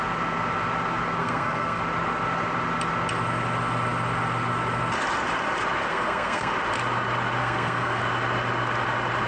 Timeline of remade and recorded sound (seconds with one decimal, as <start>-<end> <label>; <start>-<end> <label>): 0.0-1.2 recorded; 1.2-1.8 remade; 1.8-5.9 recorded; 5.9-6.5 remade; 6.5-7.4 recorded; 7.4-8.0 remade; 8.0-9.3 recorded